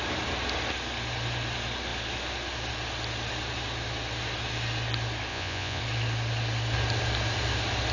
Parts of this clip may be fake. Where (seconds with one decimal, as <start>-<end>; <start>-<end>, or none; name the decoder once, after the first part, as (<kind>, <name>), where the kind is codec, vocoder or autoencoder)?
5.3-5.8 (vocoder, Vocos)